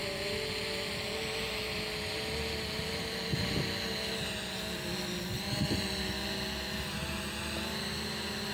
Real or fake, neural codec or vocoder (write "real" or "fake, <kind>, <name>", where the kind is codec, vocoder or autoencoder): real